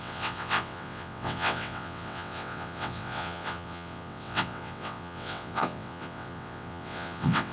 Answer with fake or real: fake